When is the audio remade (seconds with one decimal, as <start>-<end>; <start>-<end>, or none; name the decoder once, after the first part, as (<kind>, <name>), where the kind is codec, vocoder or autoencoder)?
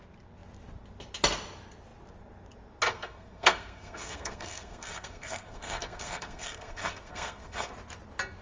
2.9-7.7 (codec, SNAC)